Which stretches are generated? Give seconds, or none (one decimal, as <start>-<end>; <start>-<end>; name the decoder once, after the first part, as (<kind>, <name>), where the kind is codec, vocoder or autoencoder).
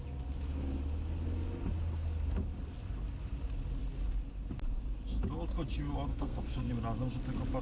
6.1-6.7 (codec, SNAC)